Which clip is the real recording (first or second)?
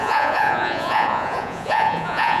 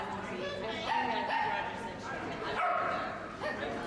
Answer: second